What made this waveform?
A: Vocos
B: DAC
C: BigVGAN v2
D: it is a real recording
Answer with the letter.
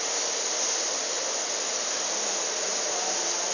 D